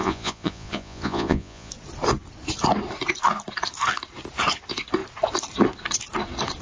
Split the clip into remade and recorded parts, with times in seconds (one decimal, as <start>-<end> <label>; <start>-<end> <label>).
0.0-1.7 remade; 1.7-6.6 recorded